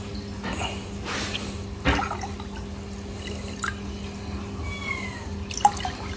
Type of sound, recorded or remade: recorded